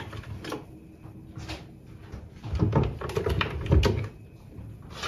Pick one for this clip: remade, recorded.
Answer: recorded